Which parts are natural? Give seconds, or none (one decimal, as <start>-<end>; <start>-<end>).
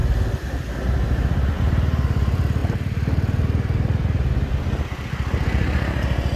0.0-2.6